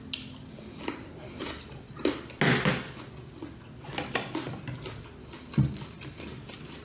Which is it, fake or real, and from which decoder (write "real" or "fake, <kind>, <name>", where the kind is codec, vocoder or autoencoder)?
real